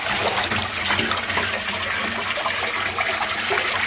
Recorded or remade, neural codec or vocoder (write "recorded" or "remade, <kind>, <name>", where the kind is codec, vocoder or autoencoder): recorded